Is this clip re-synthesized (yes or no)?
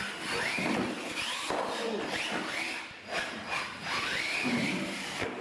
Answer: no